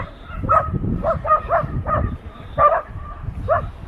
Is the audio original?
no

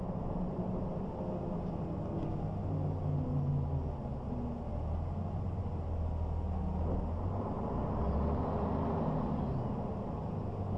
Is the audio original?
yes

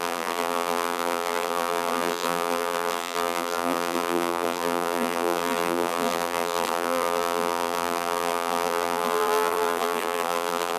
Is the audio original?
no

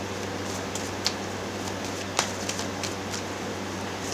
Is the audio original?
yes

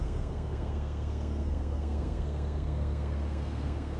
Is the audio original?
no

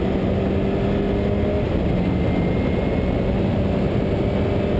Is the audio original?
yes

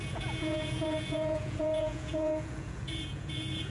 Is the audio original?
no